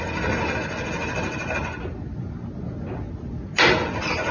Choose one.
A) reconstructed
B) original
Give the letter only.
B